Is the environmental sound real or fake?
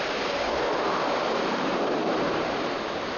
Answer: fake